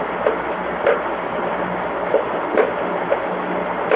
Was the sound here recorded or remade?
recorded